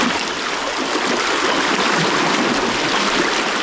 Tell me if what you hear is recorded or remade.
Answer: recorded